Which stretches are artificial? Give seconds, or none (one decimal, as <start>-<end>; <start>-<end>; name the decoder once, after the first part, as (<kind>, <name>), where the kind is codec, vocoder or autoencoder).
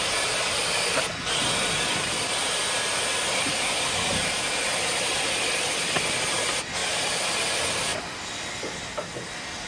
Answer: 6.8-7.5 (vocoder, BigVGAN v2)